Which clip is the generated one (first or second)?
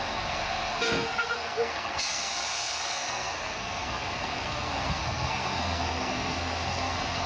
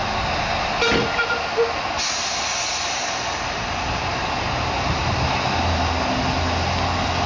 first